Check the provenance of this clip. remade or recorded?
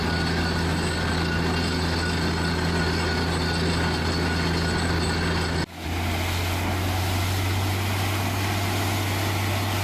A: recorded